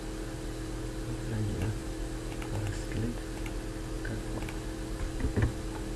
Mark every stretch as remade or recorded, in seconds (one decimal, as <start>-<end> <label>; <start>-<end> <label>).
0.0-6.0 recorded

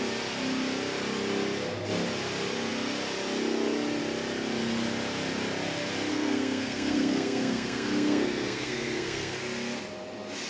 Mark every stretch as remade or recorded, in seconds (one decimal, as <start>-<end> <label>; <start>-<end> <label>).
0.0-6.1 recorded; 6.1-9.4 remade; 9.4-10.5 recorded

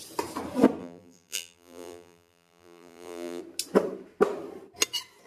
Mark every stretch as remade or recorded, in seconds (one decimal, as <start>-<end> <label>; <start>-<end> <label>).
0.0-0.8 recorded; 0.8-3.4 remade; 3.4-5.3 recorded

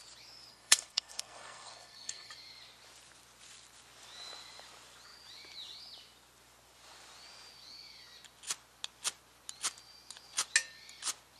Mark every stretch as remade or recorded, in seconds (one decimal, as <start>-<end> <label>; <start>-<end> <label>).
0.0-0.5 recorded; 0.5-2.3 remade; 2.3-11.4 recorded